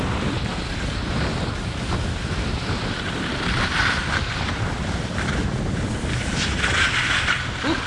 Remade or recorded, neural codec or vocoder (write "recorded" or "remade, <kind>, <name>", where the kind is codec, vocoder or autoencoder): remade, vocoder, BigVGAN v2